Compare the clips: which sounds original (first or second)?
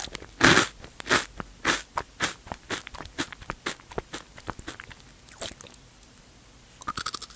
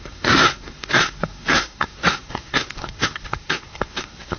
first